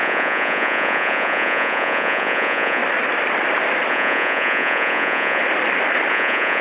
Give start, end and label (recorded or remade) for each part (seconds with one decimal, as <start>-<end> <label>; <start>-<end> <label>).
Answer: 0.0-2.8 remade; 2.8-3.9 recorded; 3.9-5.4 remade; 5.4-6.1 recorded; 6.1-6.6 remade